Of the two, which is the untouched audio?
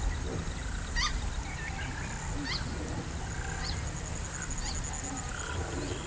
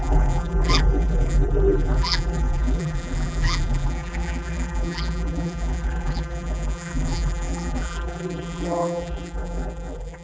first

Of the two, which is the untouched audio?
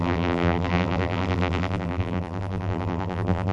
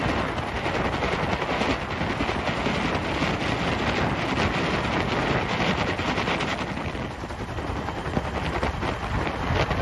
second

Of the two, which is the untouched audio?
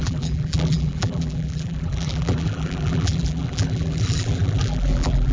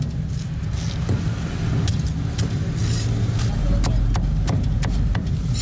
second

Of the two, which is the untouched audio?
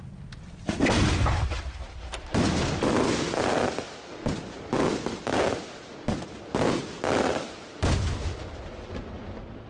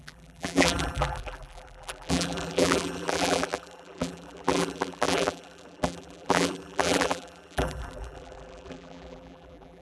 first